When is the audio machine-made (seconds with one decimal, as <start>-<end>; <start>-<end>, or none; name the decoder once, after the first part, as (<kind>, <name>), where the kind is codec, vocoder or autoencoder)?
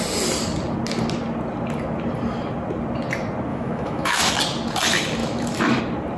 3.5-4.3 (autoencoder, DAC-VAE); 5.2-5.8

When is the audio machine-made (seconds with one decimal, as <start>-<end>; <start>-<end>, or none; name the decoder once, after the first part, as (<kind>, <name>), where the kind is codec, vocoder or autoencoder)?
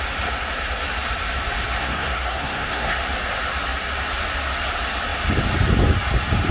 1.8-3.0 (codec, SNAC)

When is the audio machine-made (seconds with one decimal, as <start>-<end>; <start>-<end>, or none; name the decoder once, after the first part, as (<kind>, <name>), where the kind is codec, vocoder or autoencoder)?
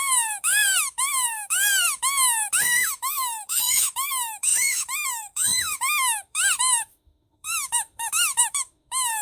0.0-9.2 (autoencoder, DAC-VAE)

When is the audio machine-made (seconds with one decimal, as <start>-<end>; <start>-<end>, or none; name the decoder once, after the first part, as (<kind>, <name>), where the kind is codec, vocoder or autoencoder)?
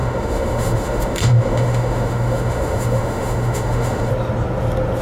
0.0-4.1 (autoencoder, DAC-VAE)